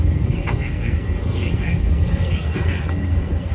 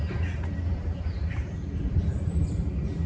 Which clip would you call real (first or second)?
second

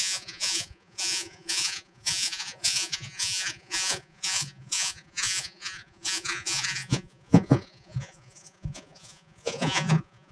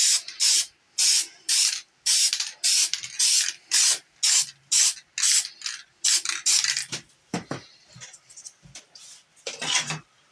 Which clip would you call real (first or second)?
second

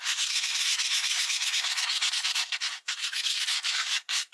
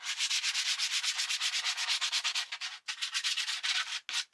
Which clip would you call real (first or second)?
second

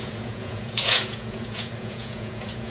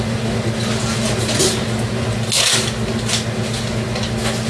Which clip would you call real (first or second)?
second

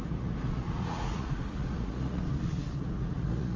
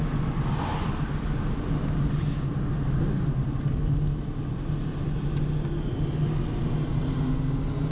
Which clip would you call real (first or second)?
second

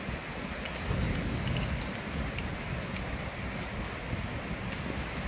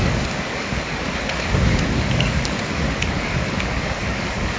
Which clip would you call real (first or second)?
first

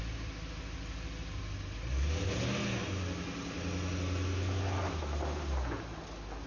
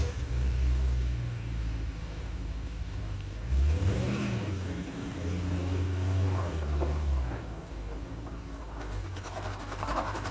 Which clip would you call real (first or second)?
first